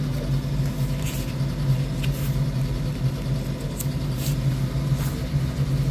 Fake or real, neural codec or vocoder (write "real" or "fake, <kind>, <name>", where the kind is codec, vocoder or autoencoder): real